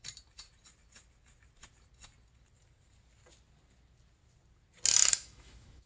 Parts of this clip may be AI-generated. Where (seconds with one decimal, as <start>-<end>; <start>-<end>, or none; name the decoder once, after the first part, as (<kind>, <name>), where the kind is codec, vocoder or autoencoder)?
5.0-5.9 (autoencoder, DAC-VAE)